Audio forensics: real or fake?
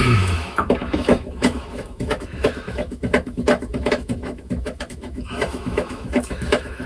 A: fake